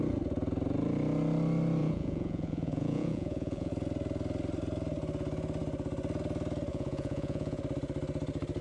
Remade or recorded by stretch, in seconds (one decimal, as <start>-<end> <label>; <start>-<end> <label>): 0.0-1.8 recorded; 1.8-3.7 remade; 3.7-6.7 recorded; 6.7-7.6 remade; 7.6-8.6 recorded